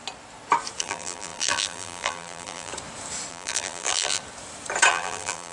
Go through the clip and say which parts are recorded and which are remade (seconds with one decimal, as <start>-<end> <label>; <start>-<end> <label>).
0.0-0.8 recorded; 0.8-2.7 remade; 2.7-3.3 recorded; 3.3-4.2 remade; 4.2-4.9 recorded; 4.9-5.5 remade